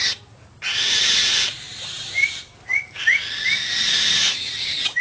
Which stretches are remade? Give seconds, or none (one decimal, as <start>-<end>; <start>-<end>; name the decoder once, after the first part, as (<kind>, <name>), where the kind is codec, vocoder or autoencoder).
none